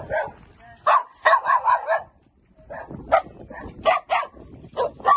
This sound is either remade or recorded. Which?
recorded